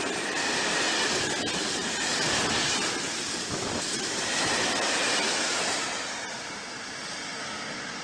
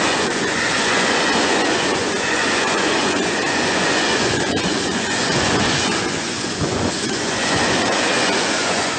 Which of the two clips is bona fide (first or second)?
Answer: first